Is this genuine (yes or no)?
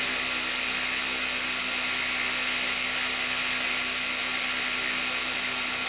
yes